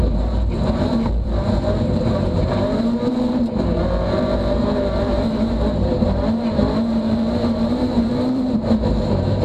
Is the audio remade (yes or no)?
yes